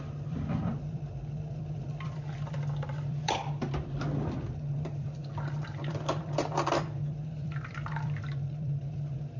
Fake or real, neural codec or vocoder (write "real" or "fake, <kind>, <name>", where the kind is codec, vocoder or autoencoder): fake, vocoder, BigVGAN v2